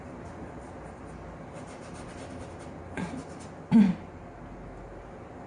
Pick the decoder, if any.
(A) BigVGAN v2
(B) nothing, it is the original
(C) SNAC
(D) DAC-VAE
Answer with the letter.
B